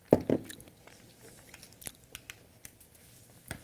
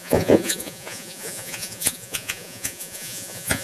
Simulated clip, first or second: second